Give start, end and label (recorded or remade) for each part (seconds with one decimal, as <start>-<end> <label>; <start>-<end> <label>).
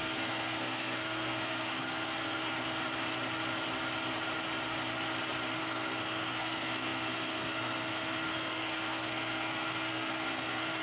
0.0-2.4 remade; 2.4-5.6 recorded; 5.6-10.8 remade